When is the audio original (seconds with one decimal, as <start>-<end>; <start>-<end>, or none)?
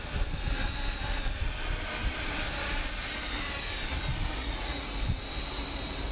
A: 0.0-4.4; 5.0-6.1